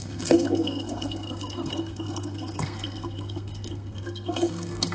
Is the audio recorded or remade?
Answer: remade